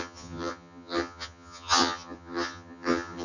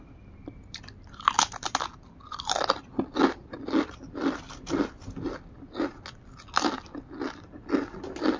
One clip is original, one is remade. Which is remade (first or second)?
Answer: first